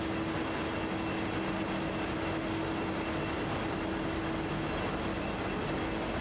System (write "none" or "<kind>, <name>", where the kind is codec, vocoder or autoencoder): none